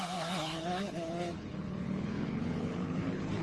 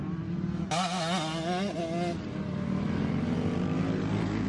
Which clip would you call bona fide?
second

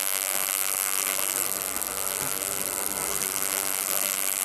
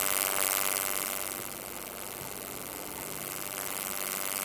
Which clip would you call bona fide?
second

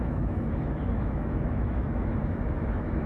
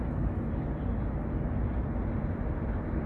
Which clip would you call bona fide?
second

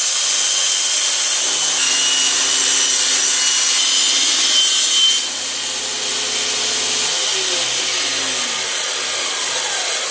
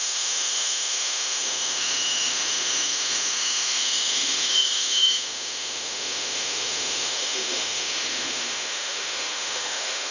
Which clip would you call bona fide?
first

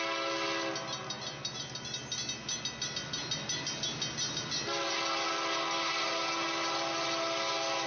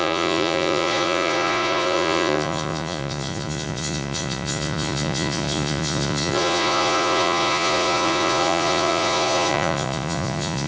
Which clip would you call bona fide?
first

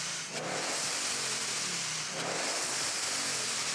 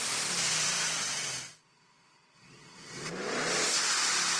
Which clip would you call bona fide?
second